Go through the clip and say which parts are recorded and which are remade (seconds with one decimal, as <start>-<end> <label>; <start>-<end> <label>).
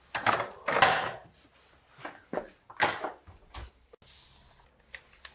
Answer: 0.0-5.3 recorded